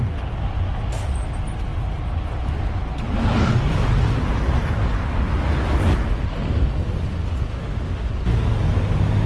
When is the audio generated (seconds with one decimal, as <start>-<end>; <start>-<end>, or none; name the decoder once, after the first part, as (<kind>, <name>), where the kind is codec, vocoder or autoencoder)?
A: 7.5-8.1 (autoencoder, DAC-VAE)